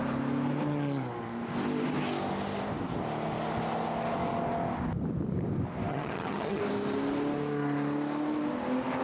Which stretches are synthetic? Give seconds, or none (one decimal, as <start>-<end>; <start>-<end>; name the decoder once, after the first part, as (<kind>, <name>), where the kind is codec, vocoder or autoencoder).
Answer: 5.9-6.6 (vocoder, HiFi-GAN)